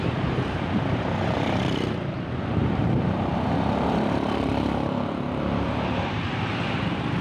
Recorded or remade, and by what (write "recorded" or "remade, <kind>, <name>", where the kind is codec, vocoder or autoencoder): remade, vocoder, BigVGAN v2